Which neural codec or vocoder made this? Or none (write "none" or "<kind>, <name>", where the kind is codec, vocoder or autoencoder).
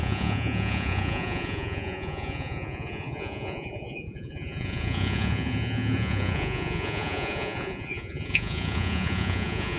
vocoder, Vocos